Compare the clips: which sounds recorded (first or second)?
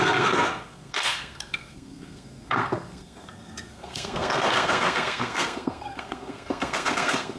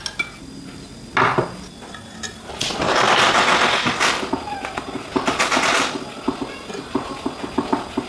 second